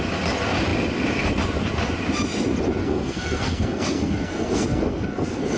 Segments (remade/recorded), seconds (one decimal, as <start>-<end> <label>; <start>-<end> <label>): 0.0-2.8 recorded; 2.8-5.6 remade